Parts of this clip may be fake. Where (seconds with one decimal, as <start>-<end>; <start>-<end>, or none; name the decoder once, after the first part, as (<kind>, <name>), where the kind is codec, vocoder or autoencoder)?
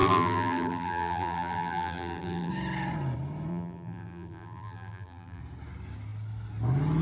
0.0-2.5 (vocoder, BigVGAN v2); 3.5-5.4